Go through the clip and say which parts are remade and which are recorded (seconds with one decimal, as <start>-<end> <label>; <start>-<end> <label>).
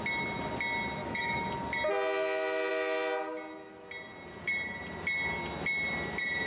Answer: 0.0-1.0 recorded; 1.0-1.5 remade; 1.5-6.5 recorded